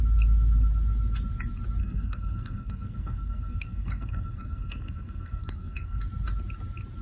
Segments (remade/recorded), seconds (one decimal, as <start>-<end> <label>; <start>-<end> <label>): 0.0-1.8 recorded; 1.8-6.0 remade; 6.0-7.0 recorded